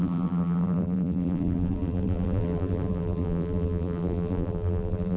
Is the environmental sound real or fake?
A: fake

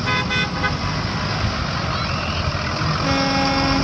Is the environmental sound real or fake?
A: real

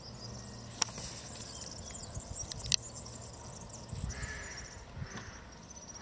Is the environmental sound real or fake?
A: real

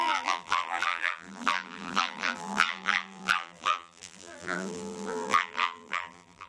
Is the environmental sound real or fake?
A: fake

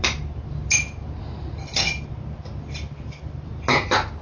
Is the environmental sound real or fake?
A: real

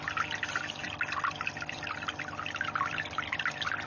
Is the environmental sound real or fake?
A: real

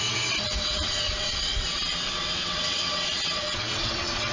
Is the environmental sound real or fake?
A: fake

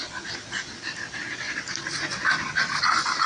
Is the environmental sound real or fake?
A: real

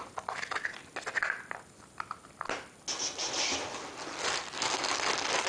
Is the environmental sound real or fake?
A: real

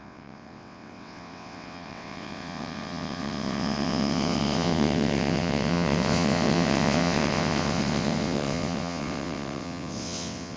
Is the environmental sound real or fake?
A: fake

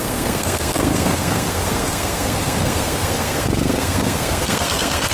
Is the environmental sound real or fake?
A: fake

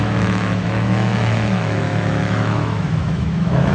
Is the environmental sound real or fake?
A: fake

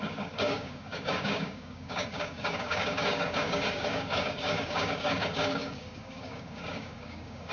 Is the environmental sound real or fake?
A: fake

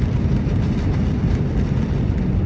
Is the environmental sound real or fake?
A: real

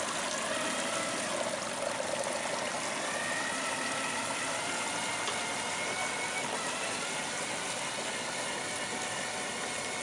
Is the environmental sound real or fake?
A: real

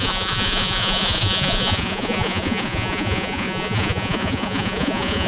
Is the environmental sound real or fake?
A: fake